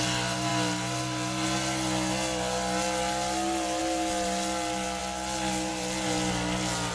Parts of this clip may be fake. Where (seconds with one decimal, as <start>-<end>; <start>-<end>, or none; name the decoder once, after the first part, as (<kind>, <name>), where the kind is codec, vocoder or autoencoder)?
none